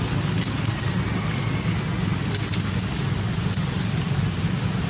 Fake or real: real